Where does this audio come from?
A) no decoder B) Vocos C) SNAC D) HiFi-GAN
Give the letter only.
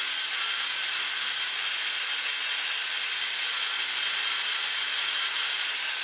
A